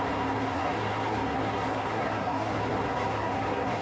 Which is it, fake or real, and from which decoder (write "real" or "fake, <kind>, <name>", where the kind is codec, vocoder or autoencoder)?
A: fake, codec, SNAC